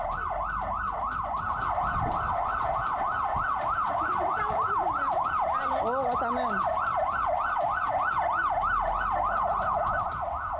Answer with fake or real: real